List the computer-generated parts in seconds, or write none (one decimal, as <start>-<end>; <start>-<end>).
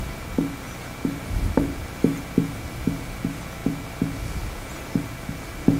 none